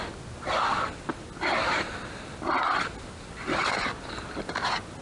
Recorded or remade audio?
recorded